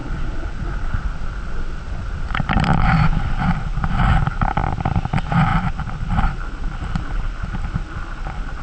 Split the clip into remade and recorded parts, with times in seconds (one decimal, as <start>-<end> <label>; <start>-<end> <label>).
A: 0.0-8.6 recorded